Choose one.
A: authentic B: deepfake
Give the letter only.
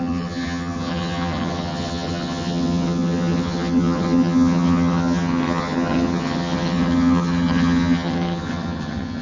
B